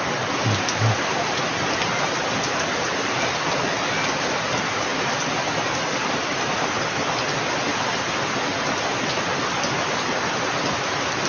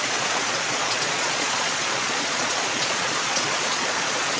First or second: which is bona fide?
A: first